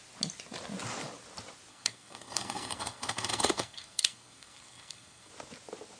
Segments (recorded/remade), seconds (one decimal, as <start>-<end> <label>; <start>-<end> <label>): 0.0-1.7 recorded; 1.7-5.3 remade; 5.3-6.0 recorded